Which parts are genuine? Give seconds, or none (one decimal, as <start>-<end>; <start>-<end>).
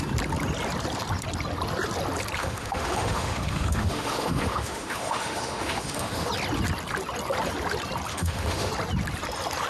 0.0-2.4; 6.3-8.1; 8.7-9.7